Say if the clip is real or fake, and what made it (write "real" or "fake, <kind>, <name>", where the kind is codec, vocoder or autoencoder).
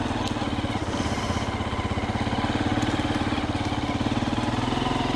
real